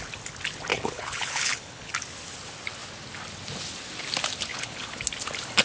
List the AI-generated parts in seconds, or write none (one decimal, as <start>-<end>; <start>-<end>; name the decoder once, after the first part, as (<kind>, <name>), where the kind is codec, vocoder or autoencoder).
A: 0.7-1.9 (codec, HILCodec); 4.5-5.0